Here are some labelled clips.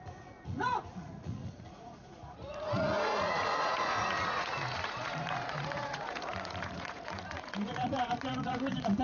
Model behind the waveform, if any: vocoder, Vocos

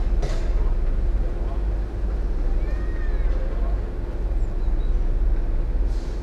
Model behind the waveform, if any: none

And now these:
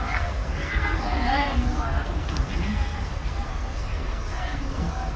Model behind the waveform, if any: codec, SNAC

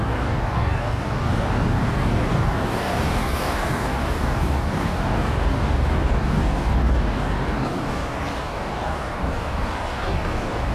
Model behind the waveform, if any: codec, DAC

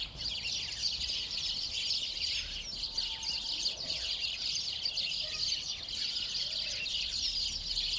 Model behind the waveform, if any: none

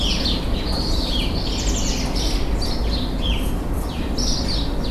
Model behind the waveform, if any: none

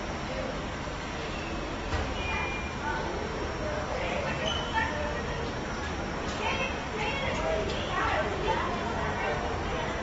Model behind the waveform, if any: none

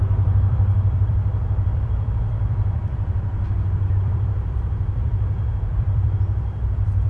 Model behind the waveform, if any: vocoder, BigVGAN v2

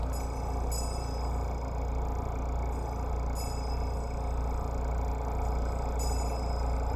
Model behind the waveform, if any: none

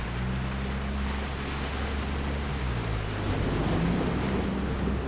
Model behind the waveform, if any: none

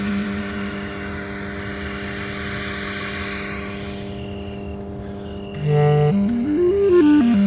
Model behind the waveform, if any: none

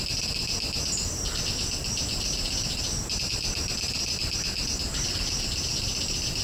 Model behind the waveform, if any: none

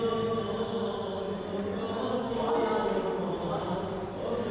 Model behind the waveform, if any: none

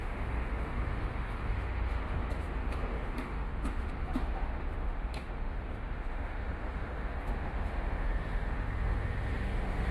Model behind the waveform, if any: autoencoder, DAC-VAE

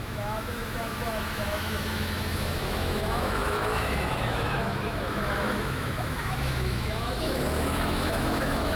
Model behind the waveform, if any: autoencoder, DAC-VAE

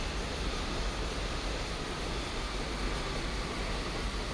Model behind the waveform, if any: none